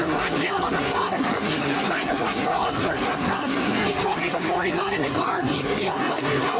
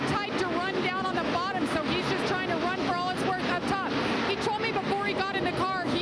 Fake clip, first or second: first